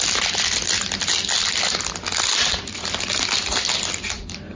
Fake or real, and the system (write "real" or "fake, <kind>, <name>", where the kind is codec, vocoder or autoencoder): real